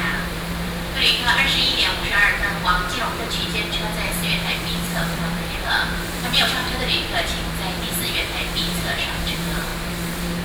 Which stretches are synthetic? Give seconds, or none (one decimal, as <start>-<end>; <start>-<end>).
0.0-3.5; 4.1-10.4